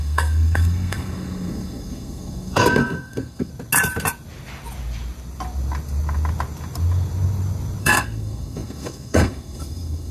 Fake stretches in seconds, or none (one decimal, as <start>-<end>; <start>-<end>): 0.0-3.5; 7.8-10.1